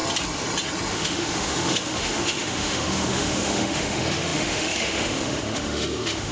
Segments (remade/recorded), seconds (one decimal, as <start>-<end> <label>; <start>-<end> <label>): 0.0-0.9 recorded; 0.9-6.3 remade